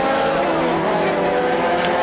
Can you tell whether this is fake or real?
real